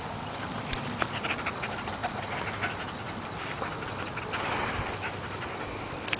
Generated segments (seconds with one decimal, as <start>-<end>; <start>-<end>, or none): none